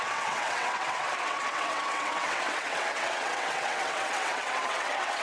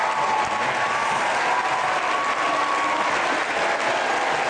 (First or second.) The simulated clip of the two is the first